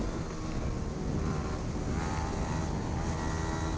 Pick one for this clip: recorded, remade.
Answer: recorded